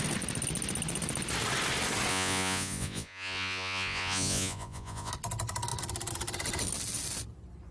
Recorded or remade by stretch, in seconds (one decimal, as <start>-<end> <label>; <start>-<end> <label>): 0.0-2.1 recorded; 2.1-5.1 remade; 5.1-7.7 recorded